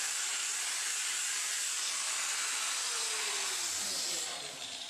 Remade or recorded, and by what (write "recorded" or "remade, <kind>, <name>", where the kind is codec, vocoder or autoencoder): remade, vocoder, BigVGAN v2